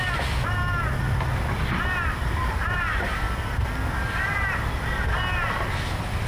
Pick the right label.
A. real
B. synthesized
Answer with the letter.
A